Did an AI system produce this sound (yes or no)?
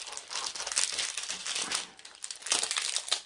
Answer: no